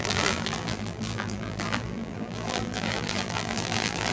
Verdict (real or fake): fake